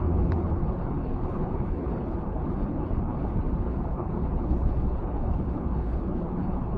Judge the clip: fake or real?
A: fake